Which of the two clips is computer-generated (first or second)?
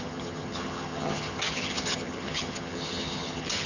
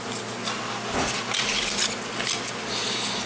first